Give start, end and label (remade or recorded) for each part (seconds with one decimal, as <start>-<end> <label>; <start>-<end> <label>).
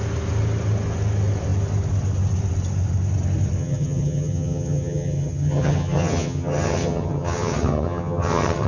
0.0-3.6 recorded; 3.6-8.7 remade